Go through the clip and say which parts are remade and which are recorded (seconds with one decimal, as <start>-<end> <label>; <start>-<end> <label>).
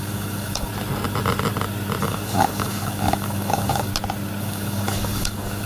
0.0-0.7 remade; 0.7-2.0 recorded; 2.0-3.9 remade; 3.9-4.4 recorded; 4.4-5.7 remade